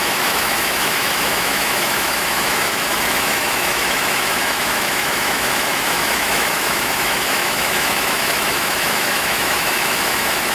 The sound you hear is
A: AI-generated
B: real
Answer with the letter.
A